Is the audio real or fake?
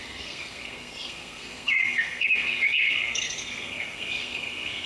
fake